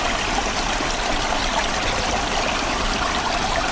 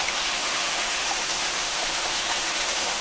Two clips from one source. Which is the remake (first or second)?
second